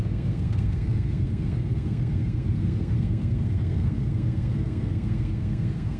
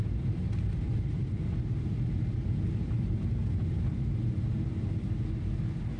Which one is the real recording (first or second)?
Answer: second